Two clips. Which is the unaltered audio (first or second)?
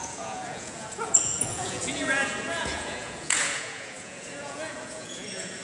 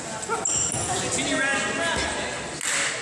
second